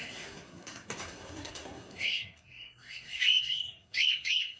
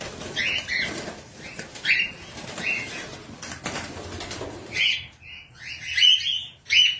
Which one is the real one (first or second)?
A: second